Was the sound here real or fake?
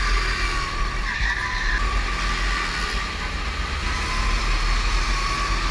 real